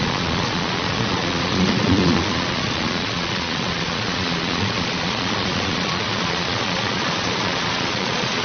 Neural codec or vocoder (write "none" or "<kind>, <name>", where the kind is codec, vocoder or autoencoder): vocoder, Vocos